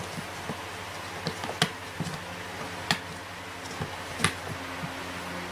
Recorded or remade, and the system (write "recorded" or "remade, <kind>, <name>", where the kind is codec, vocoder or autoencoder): recorded